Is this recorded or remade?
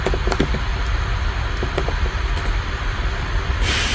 recorded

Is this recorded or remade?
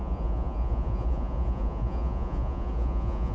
remade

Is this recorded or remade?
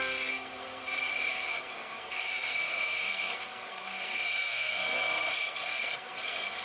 remade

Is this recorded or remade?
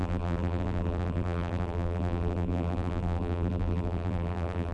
remade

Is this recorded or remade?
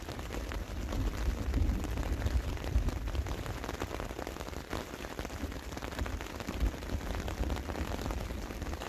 recorded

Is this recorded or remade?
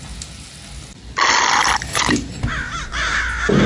recorded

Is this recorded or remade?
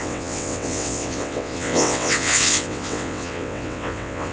remade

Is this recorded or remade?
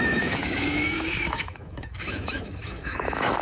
remade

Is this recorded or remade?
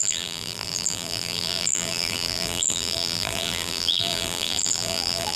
remade